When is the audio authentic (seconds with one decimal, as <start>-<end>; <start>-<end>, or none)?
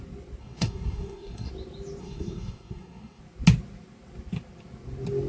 0.0-0.4; 1.5-2.0; 3.2-5.3